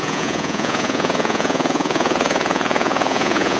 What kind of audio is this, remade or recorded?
remade